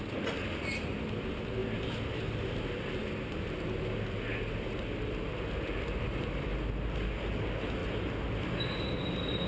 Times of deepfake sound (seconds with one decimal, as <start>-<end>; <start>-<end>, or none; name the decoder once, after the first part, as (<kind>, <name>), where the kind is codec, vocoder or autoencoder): none